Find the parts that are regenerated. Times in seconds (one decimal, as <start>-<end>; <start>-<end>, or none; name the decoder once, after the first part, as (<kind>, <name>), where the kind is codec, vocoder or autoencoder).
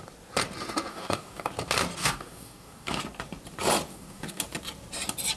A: 0.9-1.5 (codec, DAC); 2.0-3.0; 3.9-4.4